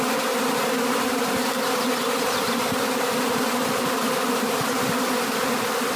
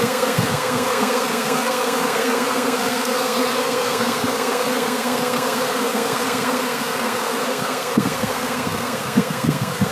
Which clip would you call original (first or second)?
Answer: first